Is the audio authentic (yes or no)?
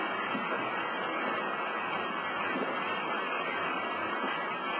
yes